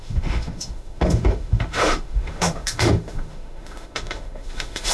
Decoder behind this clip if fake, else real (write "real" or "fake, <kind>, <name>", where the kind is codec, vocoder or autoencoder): fake, autoencoder, DAC-VAE